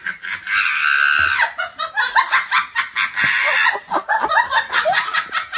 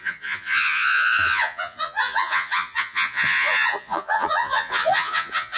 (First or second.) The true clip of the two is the first